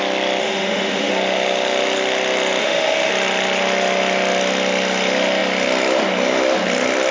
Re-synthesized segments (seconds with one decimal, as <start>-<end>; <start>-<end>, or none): 0.4-1.1; 2.6-3.1